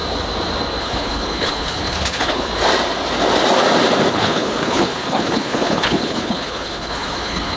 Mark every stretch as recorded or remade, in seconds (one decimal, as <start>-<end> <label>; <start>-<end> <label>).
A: 0.0-0.8 recorded; 0.8-2.5 remade; 2.5-4.1 recorded; 4.1-7.6 remade